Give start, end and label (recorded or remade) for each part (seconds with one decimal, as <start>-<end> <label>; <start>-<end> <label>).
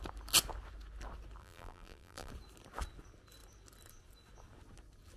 0.0-1.4 recorded; 1.4-2.3 remade; 2.3-5.2 recorded